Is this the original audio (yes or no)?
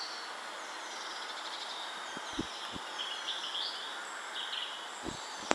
yes